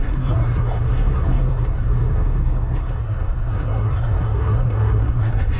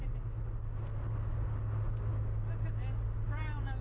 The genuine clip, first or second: second